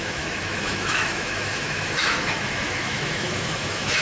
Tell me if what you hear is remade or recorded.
remade